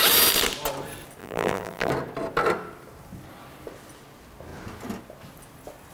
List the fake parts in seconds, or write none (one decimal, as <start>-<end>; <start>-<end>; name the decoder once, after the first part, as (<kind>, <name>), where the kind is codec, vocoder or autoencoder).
1.2-1.9 (vocoder, BigVGAN v2)